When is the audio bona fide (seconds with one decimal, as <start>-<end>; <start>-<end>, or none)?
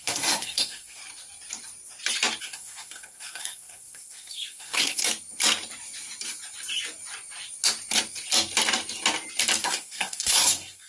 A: 1.0-2.4; 5.0-9.6